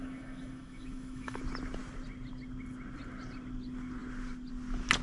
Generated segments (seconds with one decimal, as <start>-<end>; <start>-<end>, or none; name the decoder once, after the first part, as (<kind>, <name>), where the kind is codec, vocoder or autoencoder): 0.0-1.4 (autoencoder, DAC-VAE)